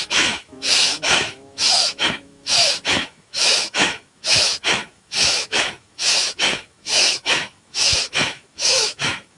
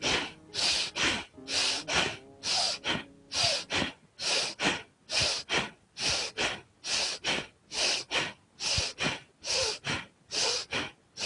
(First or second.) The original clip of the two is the second